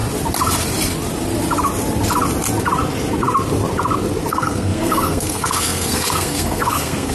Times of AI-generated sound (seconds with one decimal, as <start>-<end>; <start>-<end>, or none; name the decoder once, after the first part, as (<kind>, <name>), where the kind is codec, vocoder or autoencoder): 4.3-7.1 (codec, SNAC)